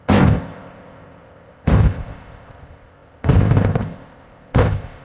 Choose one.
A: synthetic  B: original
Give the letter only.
A